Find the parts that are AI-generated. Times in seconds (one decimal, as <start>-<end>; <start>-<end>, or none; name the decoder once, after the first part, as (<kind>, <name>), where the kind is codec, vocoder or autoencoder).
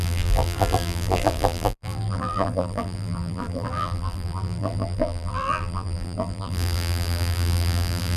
0.0-8.2 (vocoder, BigVGAN v2)